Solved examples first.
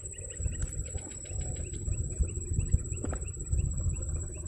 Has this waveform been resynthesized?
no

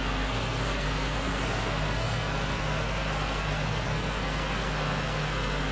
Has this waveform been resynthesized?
yes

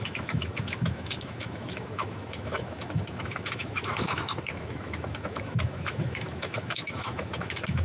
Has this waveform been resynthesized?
yes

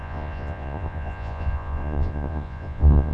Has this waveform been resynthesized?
yes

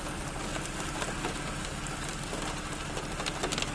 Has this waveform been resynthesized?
no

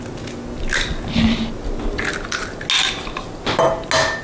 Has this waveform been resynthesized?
no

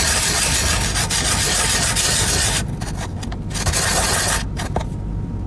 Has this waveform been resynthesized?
no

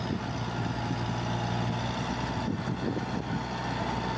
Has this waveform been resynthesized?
no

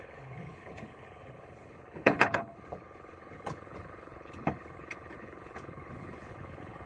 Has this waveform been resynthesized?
yes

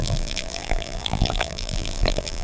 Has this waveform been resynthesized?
yes